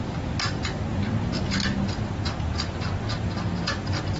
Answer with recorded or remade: recorded